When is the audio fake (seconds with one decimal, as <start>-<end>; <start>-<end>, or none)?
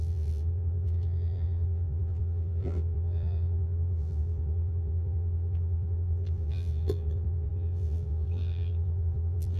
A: 0.0-9.6